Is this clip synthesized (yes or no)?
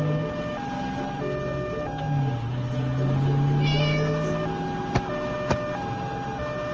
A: no